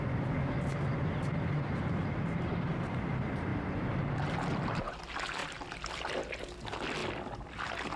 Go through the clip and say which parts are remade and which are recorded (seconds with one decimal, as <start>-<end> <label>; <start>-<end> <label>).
0.0-8.0 recorded